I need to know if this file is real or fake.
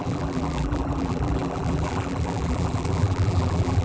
fake